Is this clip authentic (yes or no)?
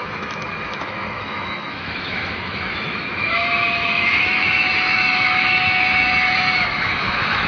no